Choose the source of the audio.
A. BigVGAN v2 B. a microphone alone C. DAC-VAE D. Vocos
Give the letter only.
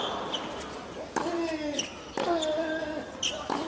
B